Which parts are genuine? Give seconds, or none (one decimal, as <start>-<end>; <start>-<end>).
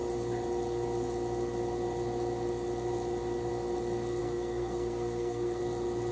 0.0-4.2; 5.6-6.1